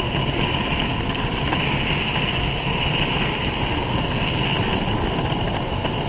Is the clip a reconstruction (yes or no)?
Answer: no